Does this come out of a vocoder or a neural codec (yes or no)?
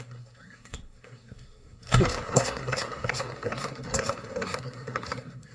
yes